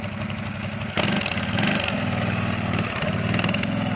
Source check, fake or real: real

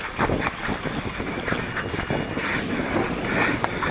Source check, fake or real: real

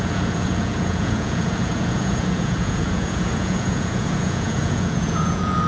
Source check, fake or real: fake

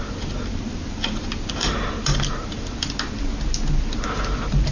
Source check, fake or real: real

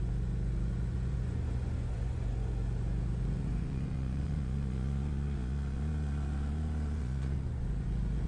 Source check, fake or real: fake